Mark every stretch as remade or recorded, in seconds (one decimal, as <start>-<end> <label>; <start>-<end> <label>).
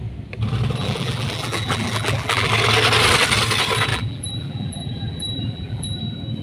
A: 0.0-0.8 recorded; 0.8-2.5 remade; 2.5-3.9 recorded; 3.9-6.0 remade; 6.0-6.4 recorded